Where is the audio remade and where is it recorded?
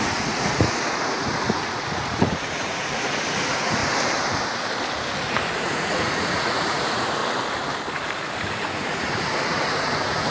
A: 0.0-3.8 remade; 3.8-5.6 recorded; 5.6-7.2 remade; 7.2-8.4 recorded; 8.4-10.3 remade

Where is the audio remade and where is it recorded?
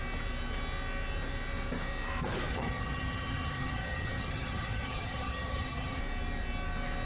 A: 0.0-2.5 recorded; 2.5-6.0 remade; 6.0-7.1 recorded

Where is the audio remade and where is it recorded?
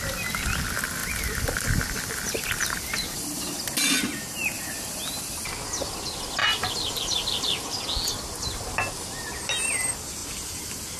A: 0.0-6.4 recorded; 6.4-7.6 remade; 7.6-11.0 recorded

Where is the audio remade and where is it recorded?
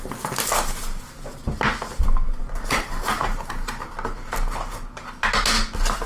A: 0.0-6.1 recorded